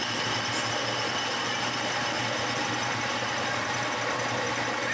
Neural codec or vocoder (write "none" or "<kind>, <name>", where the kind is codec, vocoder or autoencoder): none